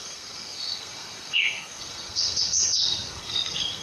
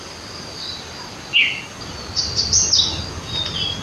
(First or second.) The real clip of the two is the second